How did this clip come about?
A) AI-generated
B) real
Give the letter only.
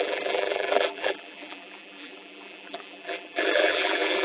A